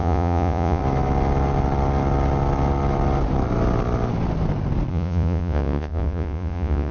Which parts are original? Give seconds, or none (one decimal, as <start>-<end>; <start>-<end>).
0.8-4.9